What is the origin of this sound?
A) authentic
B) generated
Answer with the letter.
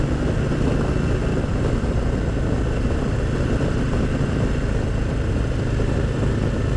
A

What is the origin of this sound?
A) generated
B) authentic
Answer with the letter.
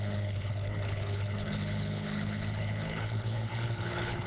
A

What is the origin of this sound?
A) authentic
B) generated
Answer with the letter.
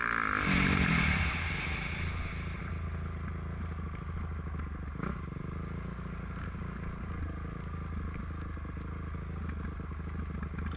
A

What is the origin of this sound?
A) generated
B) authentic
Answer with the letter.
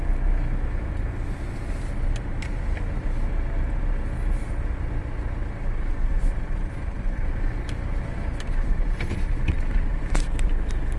B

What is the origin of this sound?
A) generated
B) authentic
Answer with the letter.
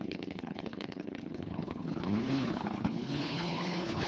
A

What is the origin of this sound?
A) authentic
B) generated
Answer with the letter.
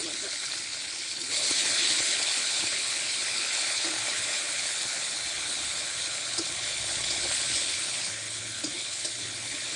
B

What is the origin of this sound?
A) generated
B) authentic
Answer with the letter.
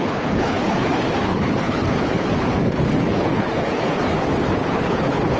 A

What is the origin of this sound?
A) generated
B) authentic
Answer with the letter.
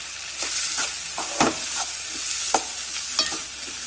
B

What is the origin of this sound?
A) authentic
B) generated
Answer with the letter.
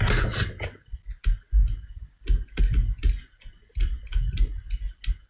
A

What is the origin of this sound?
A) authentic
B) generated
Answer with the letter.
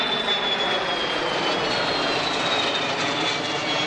A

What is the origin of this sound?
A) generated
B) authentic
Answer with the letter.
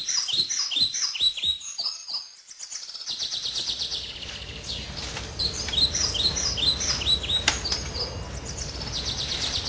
B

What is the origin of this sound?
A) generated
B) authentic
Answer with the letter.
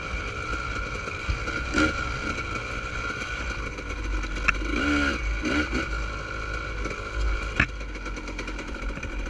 B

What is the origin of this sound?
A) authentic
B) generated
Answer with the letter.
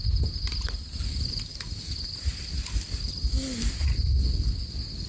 A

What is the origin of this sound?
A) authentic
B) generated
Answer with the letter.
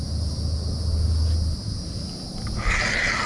A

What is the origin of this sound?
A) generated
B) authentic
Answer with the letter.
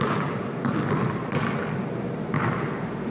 B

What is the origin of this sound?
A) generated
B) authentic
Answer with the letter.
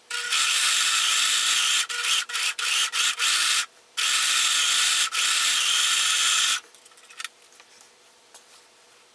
B